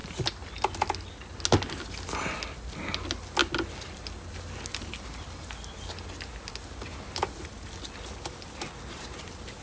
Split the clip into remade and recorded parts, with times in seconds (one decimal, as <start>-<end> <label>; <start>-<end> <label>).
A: 0.0-9.6 recorded

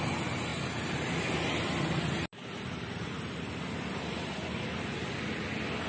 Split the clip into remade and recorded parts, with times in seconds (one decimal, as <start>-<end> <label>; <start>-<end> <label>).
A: 0.0-5.9 recorded

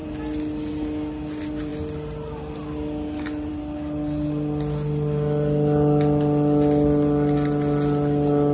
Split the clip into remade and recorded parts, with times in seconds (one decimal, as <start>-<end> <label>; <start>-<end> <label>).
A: 0.0-8.5 recorded

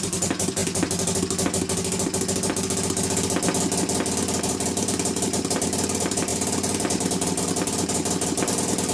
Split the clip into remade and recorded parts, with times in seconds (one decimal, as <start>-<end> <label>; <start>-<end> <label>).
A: 0.0-0.6 remade; 0.6-4.4 recorded; 4.4-8.9 remade

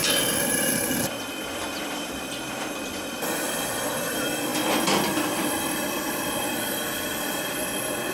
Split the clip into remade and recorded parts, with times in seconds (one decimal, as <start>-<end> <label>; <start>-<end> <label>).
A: 0.0-4.1 remade; 4.1-8.1 recorded

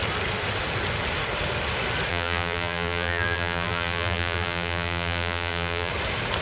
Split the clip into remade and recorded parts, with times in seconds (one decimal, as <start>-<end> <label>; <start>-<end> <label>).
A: 0.0-2.1 recorded; 2.1-5.9 remade; 5.9-6.4 recorded